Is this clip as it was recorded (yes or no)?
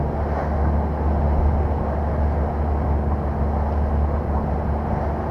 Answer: yes